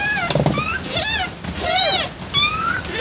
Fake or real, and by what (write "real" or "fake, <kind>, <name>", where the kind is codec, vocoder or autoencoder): real